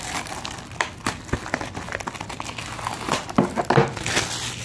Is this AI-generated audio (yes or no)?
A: no